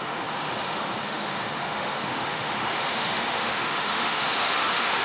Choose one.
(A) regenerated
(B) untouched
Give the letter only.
A